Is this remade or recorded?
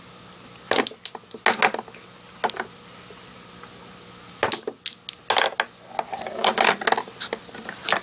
recorded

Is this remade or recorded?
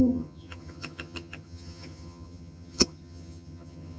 remade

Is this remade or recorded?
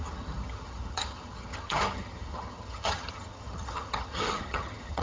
remade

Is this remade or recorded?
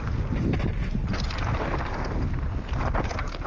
recorded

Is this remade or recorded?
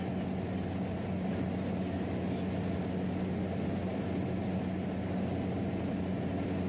recorded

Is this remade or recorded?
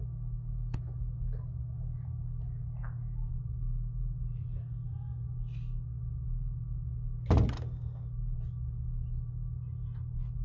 recorded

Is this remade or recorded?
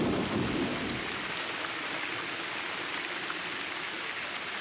recorded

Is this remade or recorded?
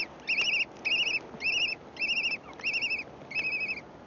recorded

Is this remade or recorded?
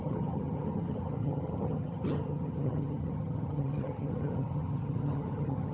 remade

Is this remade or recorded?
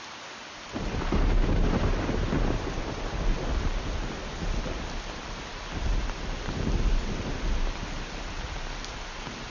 recorded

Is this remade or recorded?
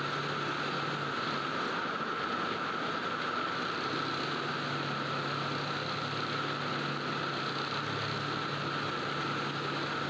recorded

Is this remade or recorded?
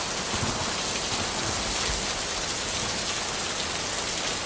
recorded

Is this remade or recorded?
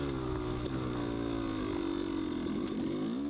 recorded